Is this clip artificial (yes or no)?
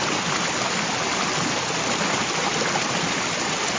no